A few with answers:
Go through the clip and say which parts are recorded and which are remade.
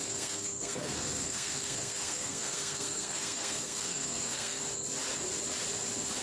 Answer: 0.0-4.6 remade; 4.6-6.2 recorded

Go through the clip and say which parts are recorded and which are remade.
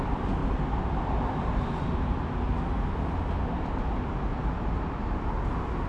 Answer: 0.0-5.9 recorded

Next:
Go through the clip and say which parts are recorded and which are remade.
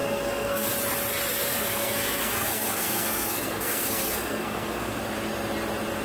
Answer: 0.0-0.7 remade; 0.7-1.4 recorded; 1.4-5.0 remade; 5.0-6.0 recorded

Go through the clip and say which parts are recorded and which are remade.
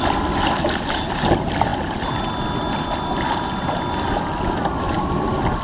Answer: 0.0-5.6 recorded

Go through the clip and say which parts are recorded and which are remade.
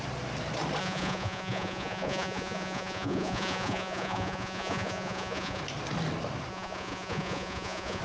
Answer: 0.0-0.8 recorded; 0.8-5.6 remade; 5.6-6.5 recorded; 6.5-8.0 remade